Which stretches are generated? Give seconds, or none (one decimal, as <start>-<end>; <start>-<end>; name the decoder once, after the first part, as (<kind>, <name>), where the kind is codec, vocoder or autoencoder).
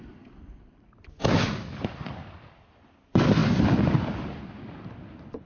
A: none